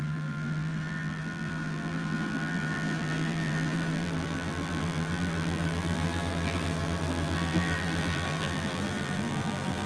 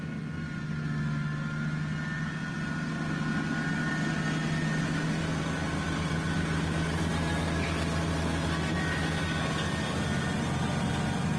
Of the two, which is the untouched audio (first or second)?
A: second